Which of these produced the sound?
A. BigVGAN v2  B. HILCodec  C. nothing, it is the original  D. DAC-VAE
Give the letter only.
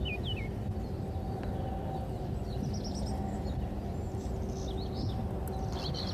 C